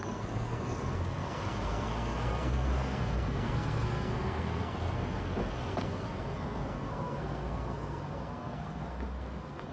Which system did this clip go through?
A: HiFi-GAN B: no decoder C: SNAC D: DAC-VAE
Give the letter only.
C